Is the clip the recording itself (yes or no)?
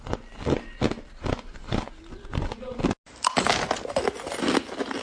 yes